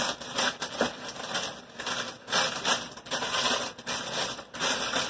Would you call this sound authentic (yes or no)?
yes